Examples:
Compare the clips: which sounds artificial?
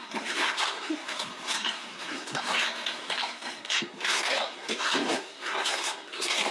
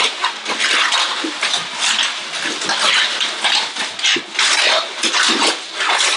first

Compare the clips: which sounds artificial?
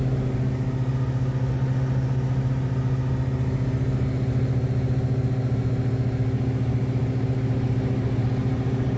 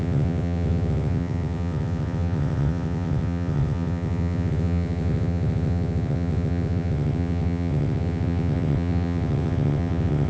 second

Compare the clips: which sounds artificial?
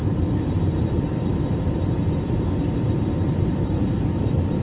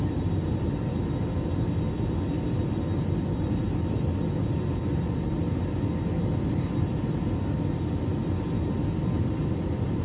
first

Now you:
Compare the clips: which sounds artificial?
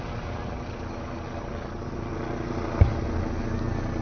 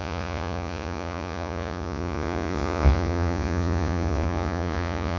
second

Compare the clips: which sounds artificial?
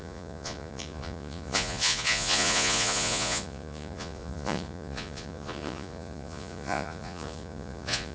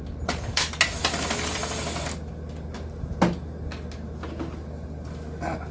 first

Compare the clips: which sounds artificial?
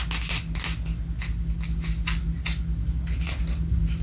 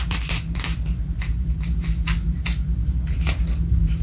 second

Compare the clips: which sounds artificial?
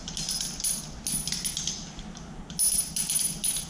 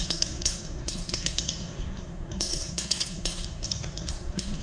second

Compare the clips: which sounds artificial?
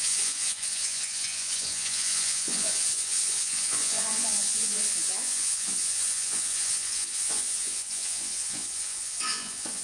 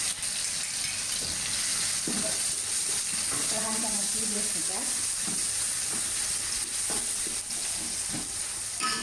first